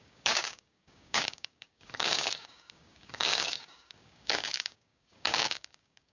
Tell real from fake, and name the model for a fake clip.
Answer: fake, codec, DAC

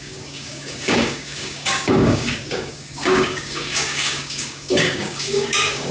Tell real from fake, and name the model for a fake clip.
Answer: fake, codec, DAC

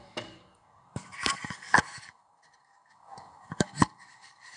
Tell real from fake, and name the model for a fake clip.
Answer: fake, codec, DAC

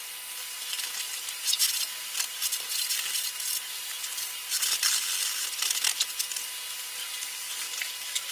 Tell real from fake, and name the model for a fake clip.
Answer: real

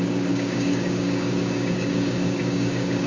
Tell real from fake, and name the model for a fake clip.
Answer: fake, codec, DAC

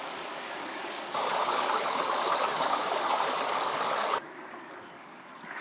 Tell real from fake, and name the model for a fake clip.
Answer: fake, codec, DAC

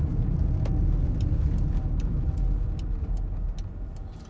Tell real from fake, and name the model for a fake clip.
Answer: real